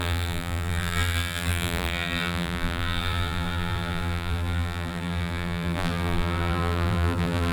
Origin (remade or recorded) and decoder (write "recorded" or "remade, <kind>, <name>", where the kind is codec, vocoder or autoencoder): remade, vocoder, BigVGAN v2